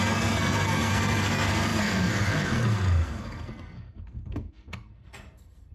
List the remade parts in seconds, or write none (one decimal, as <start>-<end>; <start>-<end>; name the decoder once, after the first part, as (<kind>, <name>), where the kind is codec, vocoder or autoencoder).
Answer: 0.0-5.7 (codec, SNAC)

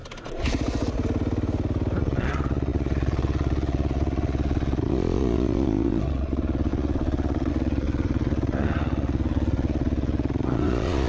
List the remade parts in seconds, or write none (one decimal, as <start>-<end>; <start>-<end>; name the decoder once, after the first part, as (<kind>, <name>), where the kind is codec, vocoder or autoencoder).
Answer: 2.0-11.1 (vocoder, Vocos)

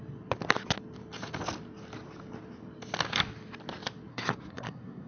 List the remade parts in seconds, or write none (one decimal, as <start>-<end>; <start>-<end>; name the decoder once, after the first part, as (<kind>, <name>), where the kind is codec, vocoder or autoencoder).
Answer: 4.1-5.1 (codec, SNAC)

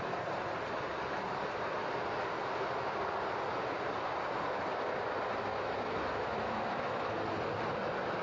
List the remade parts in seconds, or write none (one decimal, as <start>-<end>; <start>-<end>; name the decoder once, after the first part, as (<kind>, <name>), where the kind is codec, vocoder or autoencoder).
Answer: 5.5-7.1 (autoencoder, DAC-VAE)

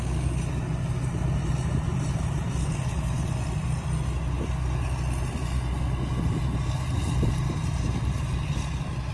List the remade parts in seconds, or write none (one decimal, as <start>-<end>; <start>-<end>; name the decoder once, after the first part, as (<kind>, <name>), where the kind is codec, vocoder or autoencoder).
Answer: 1.9-2.5 (vocoder, BigVGAN v2)